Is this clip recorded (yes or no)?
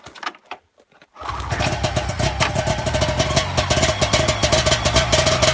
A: yes